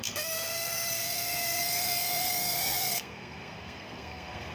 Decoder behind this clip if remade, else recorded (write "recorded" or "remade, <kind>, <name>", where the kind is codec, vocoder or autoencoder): remade, codec, SNAC